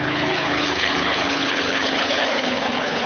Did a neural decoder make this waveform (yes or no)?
yes